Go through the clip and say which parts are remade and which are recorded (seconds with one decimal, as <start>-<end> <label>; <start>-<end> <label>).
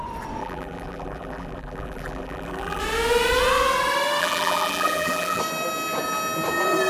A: 0.0-0.4 recorded; 0.4-2.8 remade; 2.8-4.2 recorded; 4.2-5.4 remade; 5.4-6.9 recorded